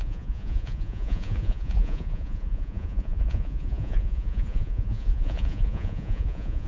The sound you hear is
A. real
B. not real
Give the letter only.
B